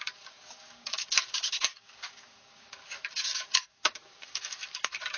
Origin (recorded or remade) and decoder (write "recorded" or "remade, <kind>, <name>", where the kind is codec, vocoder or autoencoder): remade, codec, DAC